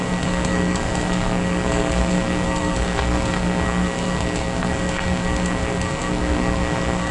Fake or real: fake